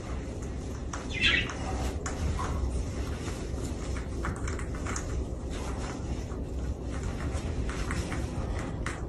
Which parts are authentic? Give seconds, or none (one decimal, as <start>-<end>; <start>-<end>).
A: 0.0-9.1